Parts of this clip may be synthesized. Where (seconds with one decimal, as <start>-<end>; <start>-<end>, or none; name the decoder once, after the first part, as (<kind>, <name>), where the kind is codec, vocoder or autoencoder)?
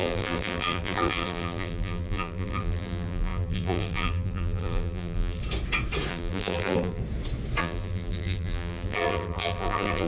0.0-5.4 (vocoder, BigVGAN v2); 6.1-7.0; 7.6-10.1